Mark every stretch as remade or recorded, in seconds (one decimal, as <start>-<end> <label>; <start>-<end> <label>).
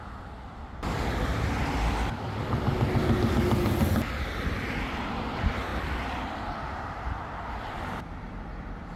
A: 0.0-1.3 remade; 1.3-3.2 recorded; 3.2-9.0 remade